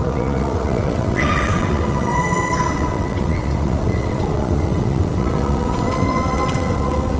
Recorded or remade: remade